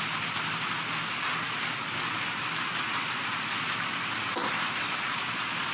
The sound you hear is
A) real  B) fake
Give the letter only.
A